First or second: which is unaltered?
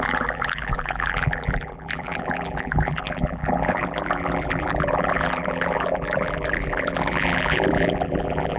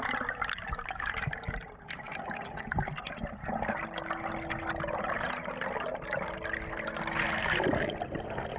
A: second